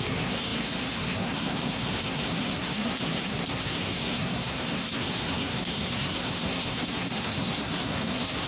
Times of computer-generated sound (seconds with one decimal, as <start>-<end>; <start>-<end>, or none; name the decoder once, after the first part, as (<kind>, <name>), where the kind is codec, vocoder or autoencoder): 0.0-8.5 (codec, SNAC)